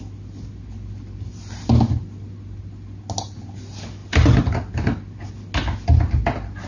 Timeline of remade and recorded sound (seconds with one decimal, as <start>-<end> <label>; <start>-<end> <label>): 0.0-6.7 recorded